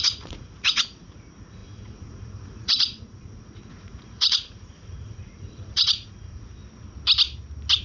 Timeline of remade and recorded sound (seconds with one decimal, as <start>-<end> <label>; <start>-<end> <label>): 0.0-6.6 remade; 6.6-7.8 recorded